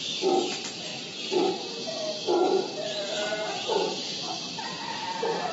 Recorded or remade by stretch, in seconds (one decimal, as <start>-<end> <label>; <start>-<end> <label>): 0.0-5.5 recorded